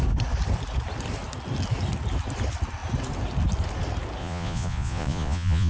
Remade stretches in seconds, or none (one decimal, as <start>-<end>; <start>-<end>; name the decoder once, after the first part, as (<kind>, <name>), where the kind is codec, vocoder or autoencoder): 4.2-5.7 (vocoder, Vocos)